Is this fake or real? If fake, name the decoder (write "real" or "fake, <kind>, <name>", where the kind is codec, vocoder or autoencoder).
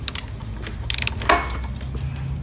real